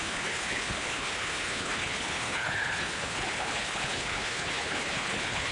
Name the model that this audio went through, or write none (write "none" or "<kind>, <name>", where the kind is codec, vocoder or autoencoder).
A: codec, HILCodec